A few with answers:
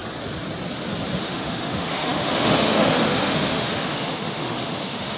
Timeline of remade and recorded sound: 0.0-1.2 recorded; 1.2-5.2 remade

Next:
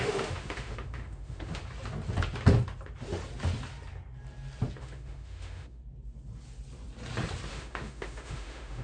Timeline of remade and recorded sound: 0.0-1.6 remade; 1.6-4.8 recorded; 4.8-5.8 remade; 5.8-7.5 recorded; 7.5-8.8 remade

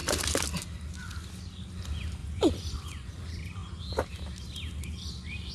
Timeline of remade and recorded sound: 0.0-2.2 recorded; 2.2-3.2 remade; 3.2-5.5 recorded

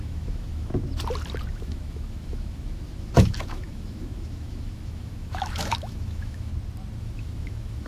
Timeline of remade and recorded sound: 0.0-0.7 remade; 0.7-1.5 recorded; 1.5-6.5 remade; 6.5-7.0 recorded; 7.0-7.9 remade

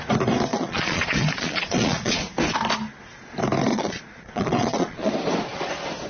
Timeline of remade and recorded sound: 0.0-0.5 recorded; 0.5-2.2 remade; 2.2-3.7 recorded; 3.7-5.1 remade; 5.1-6.1 recorded

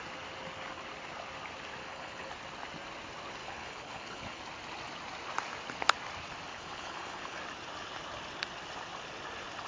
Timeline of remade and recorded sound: 0.0-1.8 recorded; 1.8-2.3 remade; 2.3-3.4 recorded; 3.4-4.4 remade; 4.4-6.5 recorded; 6.5-7.4 remade; 7.4-9.7 recorded